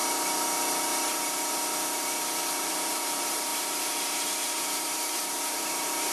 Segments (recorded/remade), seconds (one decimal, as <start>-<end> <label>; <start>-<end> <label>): 0.0-2.7 recorded; 2.7-6.1 remade